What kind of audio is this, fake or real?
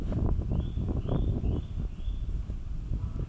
real